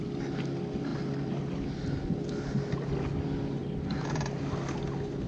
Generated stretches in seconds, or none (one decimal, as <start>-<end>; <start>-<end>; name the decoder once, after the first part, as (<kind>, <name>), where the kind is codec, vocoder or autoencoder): none